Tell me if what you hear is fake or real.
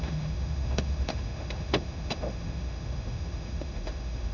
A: fake